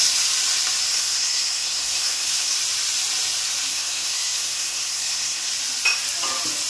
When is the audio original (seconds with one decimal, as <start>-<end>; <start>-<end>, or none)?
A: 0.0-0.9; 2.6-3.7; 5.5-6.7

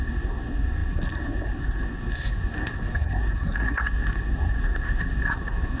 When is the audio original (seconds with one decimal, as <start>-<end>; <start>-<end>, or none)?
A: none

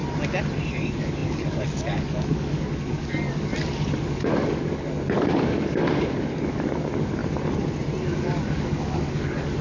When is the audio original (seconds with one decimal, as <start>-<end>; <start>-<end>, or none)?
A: 0.0-0.7; 3.5-4.1; 7.2-8.0